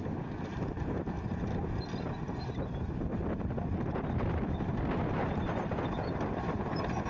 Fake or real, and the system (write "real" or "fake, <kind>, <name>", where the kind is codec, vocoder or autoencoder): real